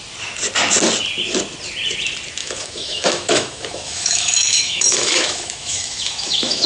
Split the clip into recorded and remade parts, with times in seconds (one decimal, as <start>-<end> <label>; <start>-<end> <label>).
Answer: 0.0-2.4 recorded; 2.4-6.7 remade